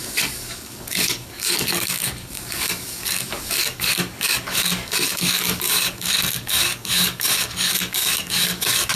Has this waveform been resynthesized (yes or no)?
yes